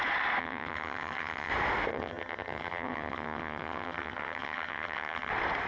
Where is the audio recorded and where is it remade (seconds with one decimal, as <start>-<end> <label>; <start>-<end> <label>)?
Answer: 0.0-0.4 recorded; 0.4-1.5 remade; 1.5-1.9 recorded; 1.9-5.3 remade; 5.3-5.7 recorded